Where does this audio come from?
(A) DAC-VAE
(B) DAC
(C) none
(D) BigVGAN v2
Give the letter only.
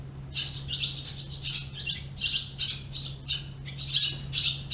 C